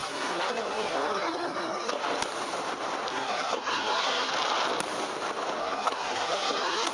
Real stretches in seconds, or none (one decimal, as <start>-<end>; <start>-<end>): 1.9-3.1; 4.3-5.6